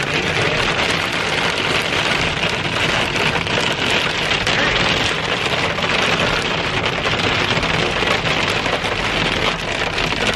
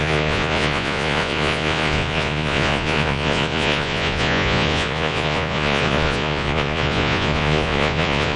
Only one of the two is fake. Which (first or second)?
second